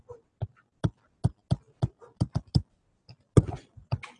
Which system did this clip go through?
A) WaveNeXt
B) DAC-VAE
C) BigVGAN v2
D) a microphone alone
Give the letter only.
D